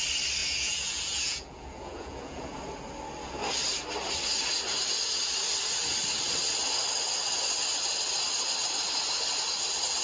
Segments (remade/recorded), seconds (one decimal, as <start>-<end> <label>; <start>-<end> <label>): 0.0-0.4 recorded; 0.4-2.6 remade; 2.6-10.0 recorded